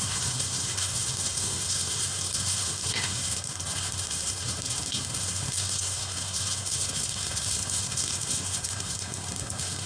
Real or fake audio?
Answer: fake